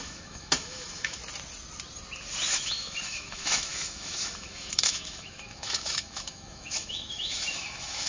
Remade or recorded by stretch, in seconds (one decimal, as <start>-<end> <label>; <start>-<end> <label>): 0.0-1.2 remade; 1.2-2.5 recorded; 2.5-8.1 remade